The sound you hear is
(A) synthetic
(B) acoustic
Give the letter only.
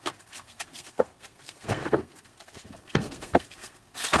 A